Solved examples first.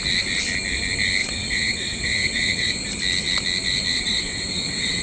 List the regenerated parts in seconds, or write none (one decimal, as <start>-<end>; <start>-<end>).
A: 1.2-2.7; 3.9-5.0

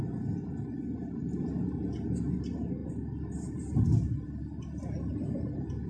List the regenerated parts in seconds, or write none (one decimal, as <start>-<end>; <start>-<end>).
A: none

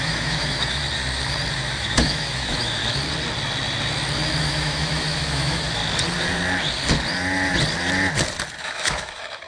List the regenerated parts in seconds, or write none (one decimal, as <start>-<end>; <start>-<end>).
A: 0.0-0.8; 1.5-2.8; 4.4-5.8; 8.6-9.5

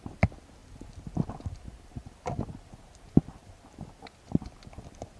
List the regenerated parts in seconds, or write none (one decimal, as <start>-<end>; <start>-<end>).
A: 0.6-2.7; 3.4-5.2